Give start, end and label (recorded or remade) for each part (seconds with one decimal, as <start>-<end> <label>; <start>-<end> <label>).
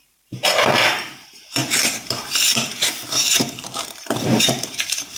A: 0.0-5.2 remade